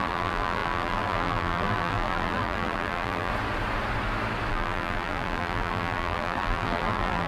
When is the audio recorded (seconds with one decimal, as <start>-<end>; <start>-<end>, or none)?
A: 3.3-4.5